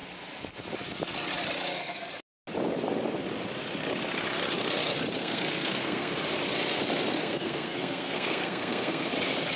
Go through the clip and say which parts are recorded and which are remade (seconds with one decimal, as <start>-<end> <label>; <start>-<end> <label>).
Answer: 0.0-5.2 recorded; 5.2-6.1 remade; 6.1-7.2 recorded; 7.2-9.1 remade; 9.1-9.6 recorded